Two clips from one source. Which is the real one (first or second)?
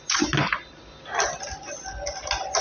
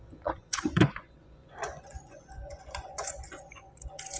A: first